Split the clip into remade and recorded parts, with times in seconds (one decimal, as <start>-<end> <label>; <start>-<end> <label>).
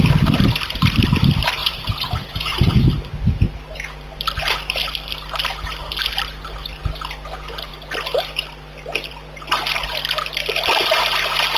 0.0-1.6 recorded; 1.6-2.8 remade; 2.8-11.6 recorded